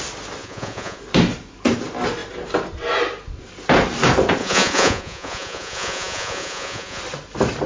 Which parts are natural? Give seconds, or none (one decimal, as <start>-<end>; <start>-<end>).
0.0-0.4; 1.0-4.4; 7.0-7.7